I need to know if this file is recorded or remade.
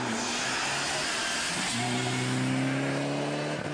recorded